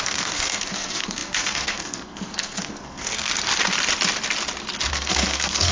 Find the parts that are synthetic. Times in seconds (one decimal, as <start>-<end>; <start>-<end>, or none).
0.0-3.3; 4.9-5.7